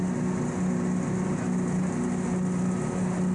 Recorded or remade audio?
recorded